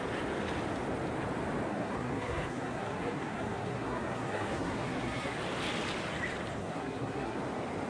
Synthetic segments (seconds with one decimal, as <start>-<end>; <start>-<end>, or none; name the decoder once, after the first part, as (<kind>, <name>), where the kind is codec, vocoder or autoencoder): 1.7-5.4 (codec, SNAC); 6.6-7.4